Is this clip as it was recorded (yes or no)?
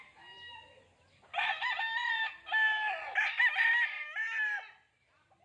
yes